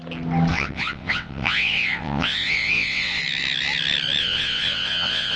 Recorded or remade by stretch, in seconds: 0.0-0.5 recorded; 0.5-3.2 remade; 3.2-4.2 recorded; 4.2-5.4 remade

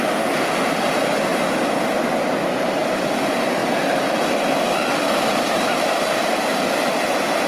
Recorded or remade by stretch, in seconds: 0.0-7.5 recorded

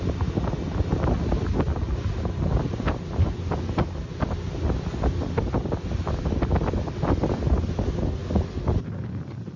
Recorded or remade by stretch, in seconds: 0.0-8.2 recorded; 8.2-8.8 remade; 8.8-9.6 recorded

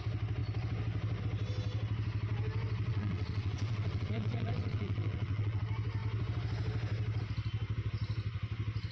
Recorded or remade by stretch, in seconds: 0.0-2.9 recorded; 2.9-5.6 remade; 5.6-8.9 recorded